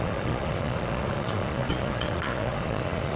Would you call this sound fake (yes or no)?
yes